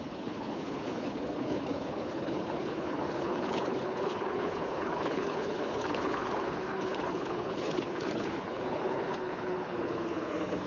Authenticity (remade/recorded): remade